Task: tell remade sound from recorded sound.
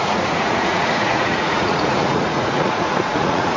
remade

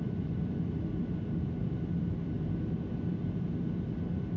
recorded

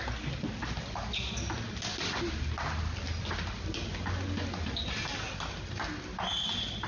recorded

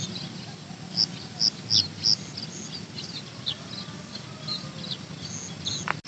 recorded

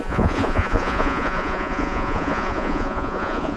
remade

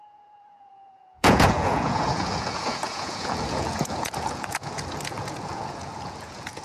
remade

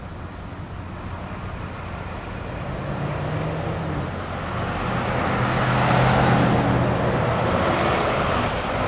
recorded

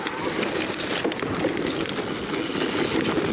recorded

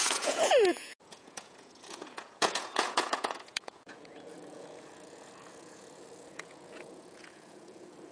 remade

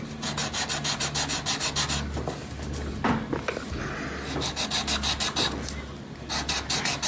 recorded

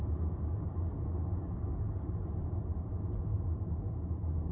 recorded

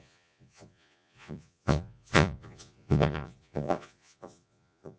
remade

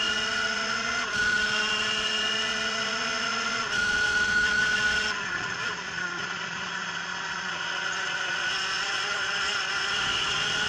remade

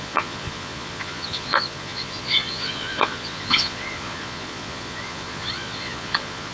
remade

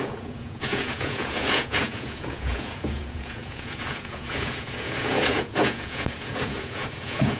remade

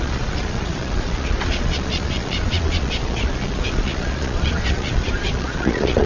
remade